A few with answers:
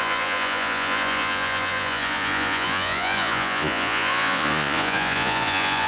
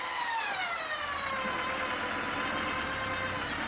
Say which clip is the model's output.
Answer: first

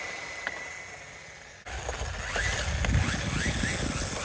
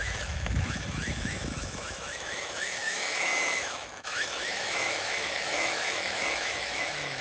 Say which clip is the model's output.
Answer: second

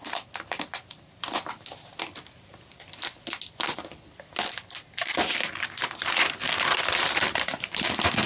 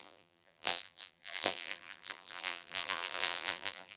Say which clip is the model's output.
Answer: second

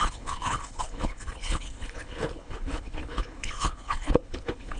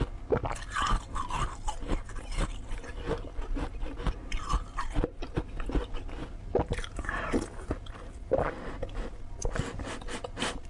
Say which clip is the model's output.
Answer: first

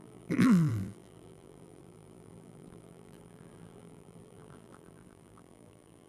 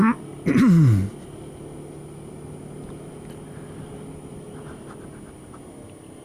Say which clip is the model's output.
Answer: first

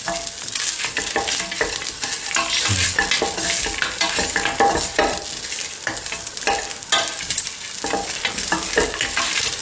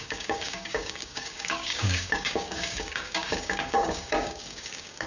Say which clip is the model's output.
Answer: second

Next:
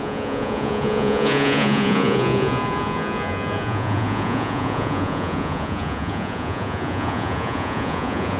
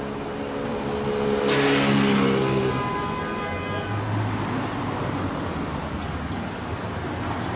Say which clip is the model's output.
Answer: first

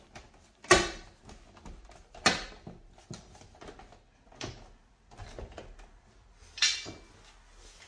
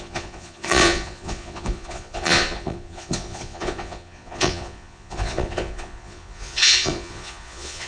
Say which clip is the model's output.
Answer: second